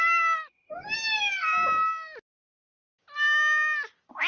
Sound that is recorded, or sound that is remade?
recorded